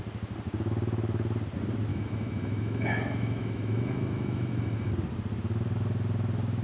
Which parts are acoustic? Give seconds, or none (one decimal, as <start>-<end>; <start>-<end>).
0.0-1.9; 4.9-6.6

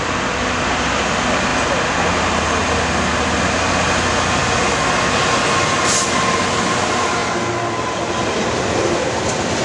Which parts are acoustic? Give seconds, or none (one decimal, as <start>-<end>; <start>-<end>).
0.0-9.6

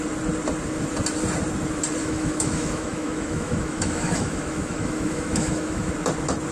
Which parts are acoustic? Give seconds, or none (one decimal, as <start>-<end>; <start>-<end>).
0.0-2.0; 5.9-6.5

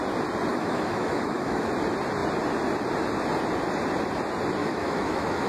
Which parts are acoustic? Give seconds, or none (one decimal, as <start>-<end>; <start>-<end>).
0.0-0.5; 1.7-4.6